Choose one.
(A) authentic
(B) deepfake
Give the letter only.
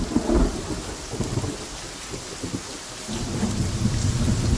A